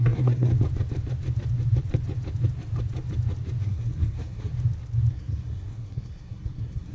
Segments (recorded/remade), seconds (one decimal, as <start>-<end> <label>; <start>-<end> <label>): 0.0-0.5 remade; 0.5-3.6 recorded; 3.6-4.5 remade; 4.5-5.1 recorded; 5.1-6.9 remade